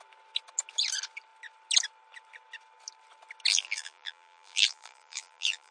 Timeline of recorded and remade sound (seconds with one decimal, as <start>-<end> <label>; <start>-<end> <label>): 0.0-3.5 recorded; 3.5-5.7 remade